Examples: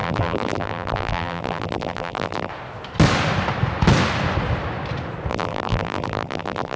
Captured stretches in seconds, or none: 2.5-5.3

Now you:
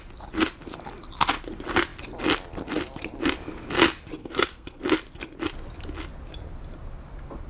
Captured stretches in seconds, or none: 0.0-4.2; 4.8-7.5

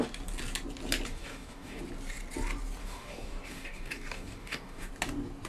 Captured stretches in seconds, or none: 0.0-1.1; 1.8-2.8; 4.9-5.5

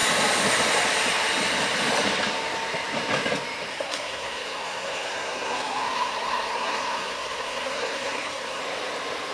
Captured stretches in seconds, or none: 0.0-3.7; 8.6-9.3

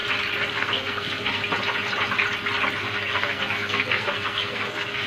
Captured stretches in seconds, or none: 0.0-0.5; 1.4-2.8

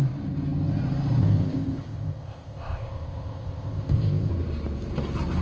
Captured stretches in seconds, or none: 0.0-1.2; 4.3-5.4

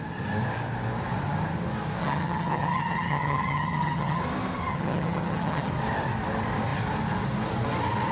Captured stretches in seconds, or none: 0.0-2.0; 4.2-4.7; 5.7-8.1